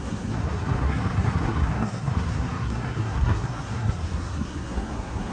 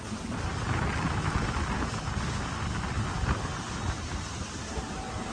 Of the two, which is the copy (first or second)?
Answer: first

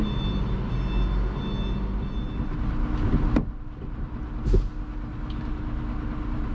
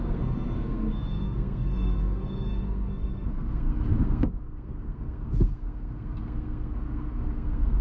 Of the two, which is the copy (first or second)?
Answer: second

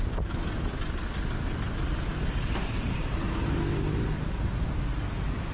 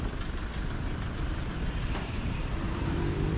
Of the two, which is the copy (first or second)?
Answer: second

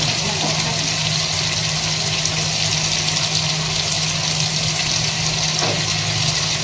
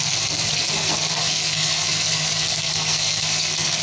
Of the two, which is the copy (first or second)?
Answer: second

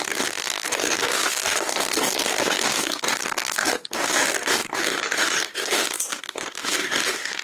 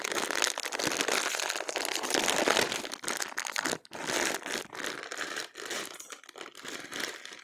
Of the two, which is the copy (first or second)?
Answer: first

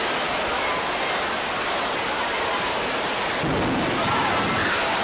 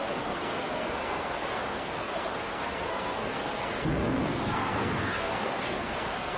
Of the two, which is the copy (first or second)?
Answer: second